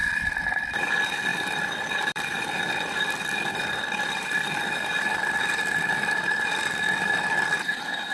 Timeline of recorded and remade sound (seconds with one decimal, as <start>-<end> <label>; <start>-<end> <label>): 0.0-1.3 recorded; 1.3-4.6 remade; 4.6-8.1 recorded